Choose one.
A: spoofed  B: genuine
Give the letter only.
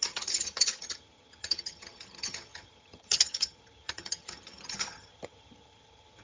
A